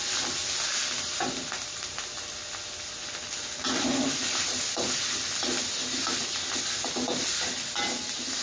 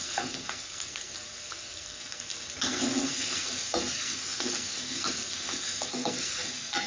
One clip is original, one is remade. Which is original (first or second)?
first